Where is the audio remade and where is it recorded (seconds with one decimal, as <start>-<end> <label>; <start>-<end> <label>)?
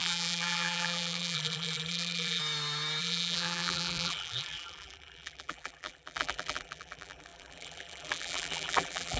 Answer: 0.0-2.4 remade; 2.4-3.0 recorded; 3.0-9.2 remade